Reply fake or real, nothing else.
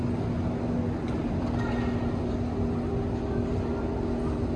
real